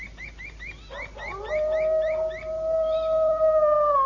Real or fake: real